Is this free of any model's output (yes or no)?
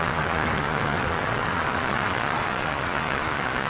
no